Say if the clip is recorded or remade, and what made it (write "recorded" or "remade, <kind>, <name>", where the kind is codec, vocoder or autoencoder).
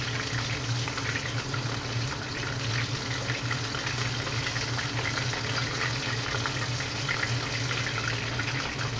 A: recorded